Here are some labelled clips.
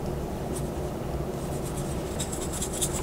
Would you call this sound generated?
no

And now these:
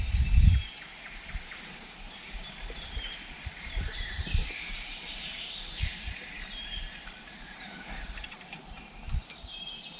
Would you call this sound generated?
yes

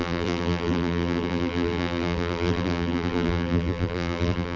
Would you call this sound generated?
yes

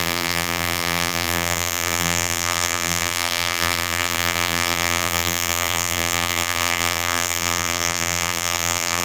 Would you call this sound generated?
yes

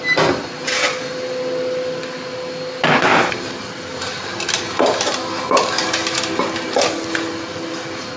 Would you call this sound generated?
no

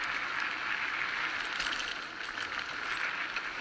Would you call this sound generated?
no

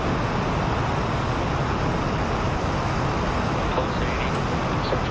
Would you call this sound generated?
no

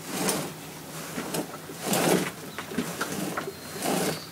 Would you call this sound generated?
yes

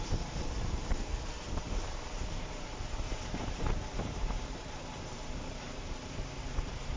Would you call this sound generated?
yes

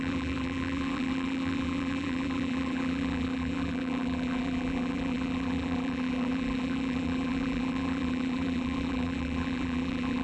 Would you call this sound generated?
yes